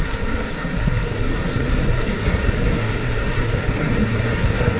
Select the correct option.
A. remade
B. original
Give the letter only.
A